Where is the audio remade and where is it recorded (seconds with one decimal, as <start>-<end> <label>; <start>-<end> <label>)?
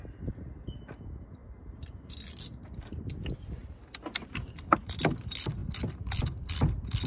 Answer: 0.0-7.1 recorded